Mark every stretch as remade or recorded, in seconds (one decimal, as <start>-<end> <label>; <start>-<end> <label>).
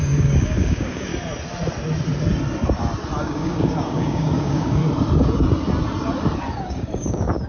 0.0-1.1 remade; 1.1-3.2 recorded; 3.2-4.8 remade; 4.8-6.6 recorded; 6.6-7.5 remade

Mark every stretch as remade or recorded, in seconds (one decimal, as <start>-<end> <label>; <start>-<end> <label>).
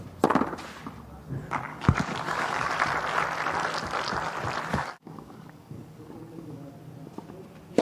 0.0-1.7 recorded; 1.7-2.7 remade; 2.7-4.7 recorded; 4.7-6.7 remade; 6.7-7.8 recorded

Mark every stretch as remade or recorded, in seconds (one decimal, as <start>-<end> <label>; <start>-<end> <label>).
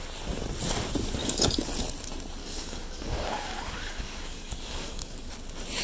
0.0-1.2 recorded; 1.2-1.7 remade; 1.7-2.4 recorded; 2.4-5.3 remade; 5.3-5.8 recorded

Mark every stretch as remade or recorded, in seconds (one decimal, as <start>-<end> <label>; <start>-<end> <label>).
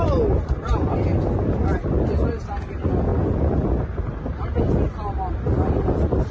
0.0-6.3 recorded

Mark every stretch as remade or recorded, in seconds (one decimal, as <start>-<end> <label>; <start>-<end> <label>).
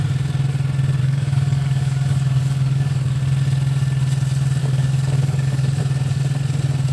0.0-1.0 recorded; 1.0-3.2 remade; 3.2-4.6 recorded; 4.6-5.8 remade; 5.8-6.9 recorded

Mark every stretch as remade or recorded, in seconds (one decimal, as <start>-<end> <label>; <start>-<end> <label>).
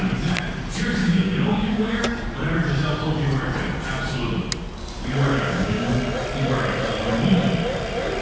0.0-1.0 recorded; 1.0-2.0 remade; 2.0-5.3 recorded; 5.3-5.9 remade; 5.9-8.2 recorded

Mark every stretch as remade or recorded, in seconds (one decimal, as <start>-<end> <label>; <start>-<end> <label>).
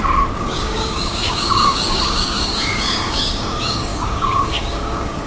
0.0-5.3 remade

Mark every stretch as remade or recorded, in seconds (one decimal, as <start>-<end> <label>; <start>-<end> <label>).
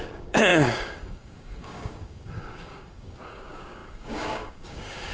0.0-5.1 remade